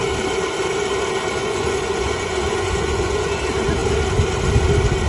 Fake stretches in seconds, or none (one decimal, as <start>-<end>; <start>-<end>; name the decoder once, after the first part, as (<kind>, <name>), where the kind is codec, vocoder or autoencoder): 1.4-3.4 (vocoder, Vocos)